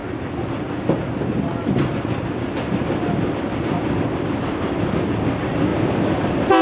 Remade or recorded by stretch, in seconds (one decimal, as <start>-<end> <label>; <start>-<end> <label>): 0.0-6.6 recorded